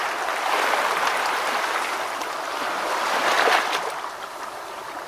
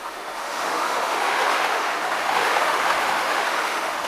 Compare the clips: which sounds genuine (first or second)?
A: first